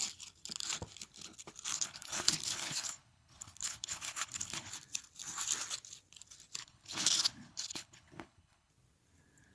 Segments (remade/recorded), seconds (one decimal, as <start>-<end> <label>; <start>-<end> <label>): 0.0-1.7 recorded; 1.7-4.7 remade; 4.7-6.6 recorded; 6.6-8.7 remade; 8.7-9.5 recorded